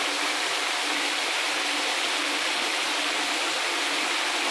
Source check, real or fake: real